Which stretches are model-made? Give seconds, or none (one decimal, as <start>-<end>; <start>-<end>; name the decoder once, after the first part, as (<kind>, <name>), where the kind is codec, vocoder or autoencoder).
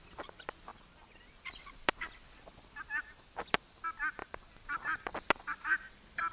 none